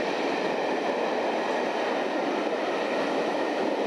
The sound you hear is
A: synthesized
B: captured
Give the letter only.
B